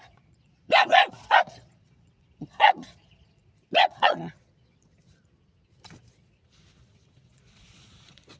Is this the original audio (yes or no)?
no